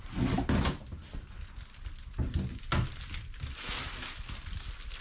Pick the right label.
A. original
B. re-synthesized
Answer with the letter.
A